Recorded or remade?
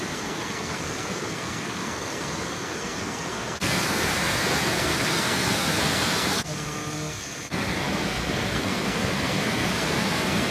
remade